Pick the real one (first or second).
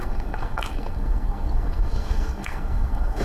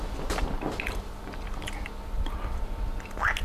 second